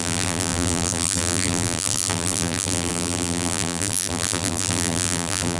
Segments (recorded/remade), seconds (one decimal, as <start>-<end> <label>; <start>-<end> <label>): 0.0-5.6 remade